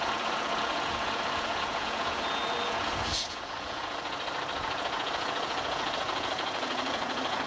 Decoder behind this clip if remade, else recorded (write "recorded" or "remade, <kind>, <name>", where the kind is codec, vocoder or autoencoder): remade, vocoder, Vocos